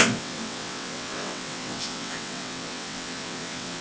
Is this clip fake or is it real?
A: fake